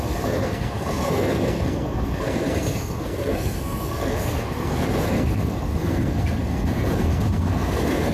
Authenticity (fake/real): fake